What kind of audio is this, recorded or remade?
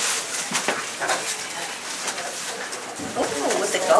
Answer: recorded